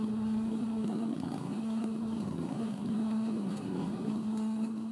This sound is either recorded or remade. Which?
remade